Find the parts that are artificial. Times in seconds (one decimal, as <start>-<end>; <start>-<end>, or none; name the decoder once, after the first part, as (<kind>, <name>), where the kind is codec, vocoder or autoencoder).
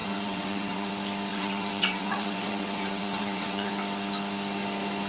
0.0-0.9 (vocoder, WaveNeXt); 1.3-3.7